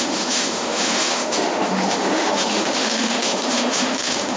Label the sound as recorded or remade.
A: remade